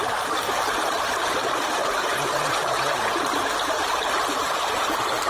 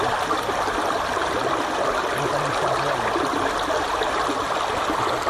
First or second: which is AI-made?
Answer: first